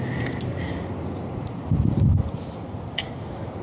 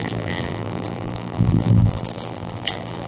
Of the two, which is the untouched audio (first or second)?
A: first